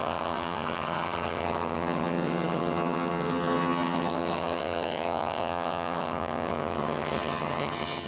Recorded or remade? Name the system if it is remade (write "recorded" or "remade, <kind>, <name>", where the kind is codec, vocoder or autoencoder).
remade, vocoder, HiFi-GAN